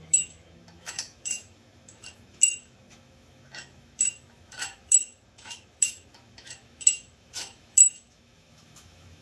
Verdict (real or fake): fake